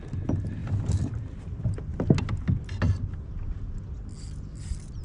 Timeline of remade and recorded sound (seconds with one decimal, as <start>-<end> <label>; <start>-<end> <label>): 0.0-0.6 recorded; 0.6-1.1 remade; 1.1-5.0 recorded